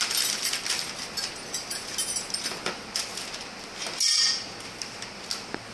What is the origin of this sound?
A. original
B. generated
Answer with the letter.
A